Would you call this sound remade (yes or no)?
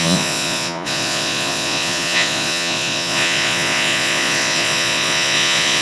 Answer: yes